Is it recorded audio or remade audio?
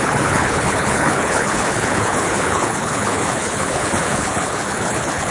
remade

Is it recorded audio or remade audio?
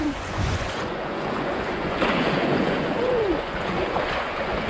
remade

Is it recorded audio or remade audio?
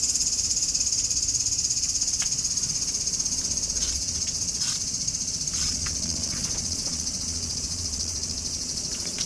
remade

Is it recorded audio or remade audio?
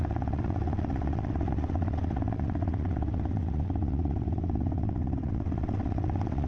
remade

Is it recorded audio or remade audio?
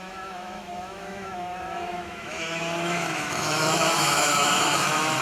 remade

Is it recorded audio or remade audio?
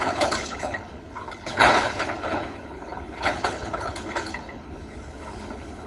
remade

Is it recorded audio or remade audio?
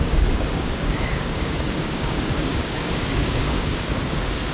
remade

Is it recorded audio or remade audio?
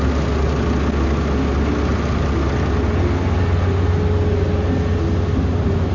recorded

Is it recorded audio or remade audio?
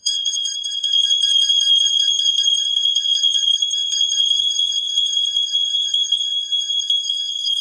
remade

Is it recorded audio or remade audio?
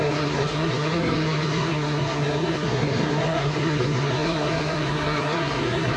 remade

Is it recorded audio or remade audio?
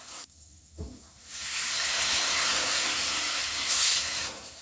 remade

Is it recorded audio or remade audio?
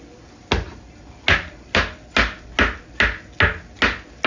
recorded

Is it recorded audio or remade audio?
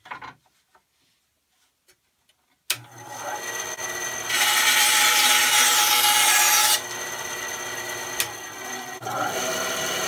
recorded